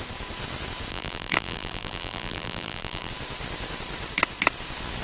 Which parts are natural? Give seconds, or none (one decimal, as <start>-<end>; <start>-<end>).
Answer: 0.0-0.9; 3.1-5.0